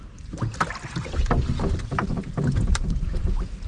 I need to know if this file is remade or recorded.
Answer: recorded